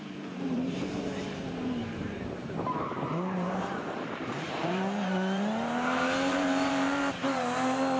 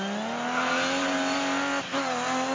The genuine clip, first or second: second